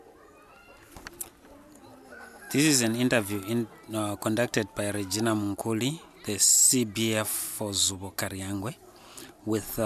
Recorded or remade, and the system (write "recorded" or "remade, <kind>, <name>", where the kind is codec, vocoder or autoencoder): recorded